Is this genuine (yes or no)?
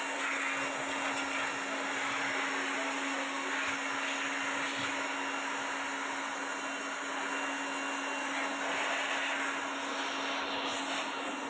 yes